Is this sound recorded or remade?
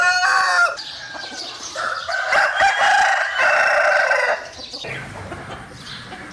remade